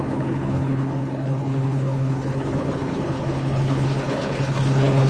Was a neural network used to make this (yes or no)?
yes